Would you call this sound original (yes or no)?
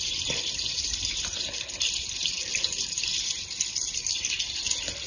yes